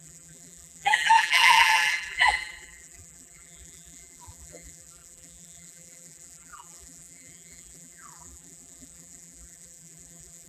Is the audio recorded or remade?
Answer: remade